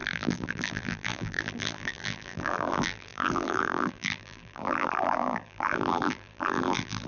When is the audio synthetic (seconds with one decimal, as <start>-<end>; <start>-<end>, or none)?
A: 0.0-7.1